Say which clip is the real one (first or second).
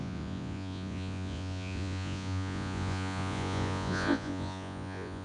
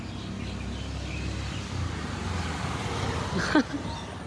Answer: second